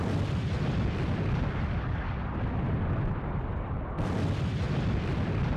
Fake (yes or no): no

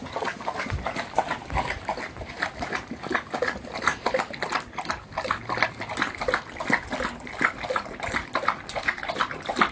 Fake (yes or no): no